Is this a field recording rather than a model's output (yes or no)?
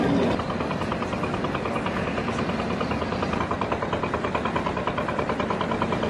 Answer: no